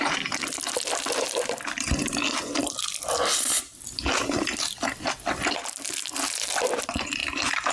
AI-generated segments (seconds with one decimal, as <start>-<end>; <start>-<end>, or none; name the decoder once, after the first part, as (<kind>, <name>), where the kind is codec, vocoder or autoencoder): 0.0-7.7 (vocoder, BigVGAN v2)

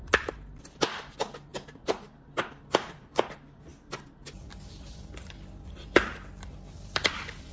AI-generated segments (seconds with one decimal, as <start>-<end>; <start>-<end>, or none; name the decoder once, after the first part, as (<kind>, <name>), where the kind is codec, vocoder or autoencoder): 0.0-3.7 (vocoder, BigVGAN v2); 4.7-7.5

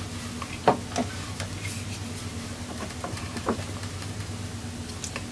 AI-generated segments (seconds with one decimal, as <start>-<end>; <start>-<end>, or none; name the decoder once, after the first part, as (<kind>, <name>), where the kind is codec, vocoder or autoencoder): 1.0-4.2 (vocoder, BigVGAN v2)